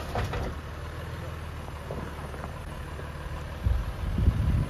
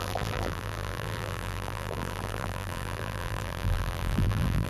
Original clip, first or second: first